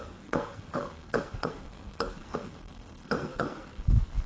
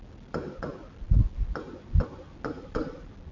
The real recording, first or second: second